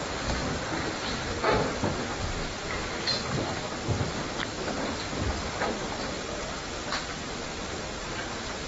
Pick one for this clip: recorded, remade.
recorded